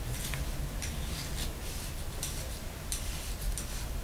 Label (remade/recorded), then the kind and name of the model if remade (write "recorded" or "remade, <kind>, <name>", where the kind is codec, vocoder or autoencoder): recorded